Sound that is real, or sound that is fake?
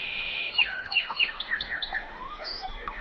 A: fake